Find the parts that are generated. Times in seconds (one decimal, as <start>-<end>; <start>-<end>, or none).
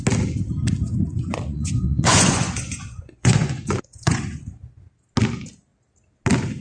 0.9-4.6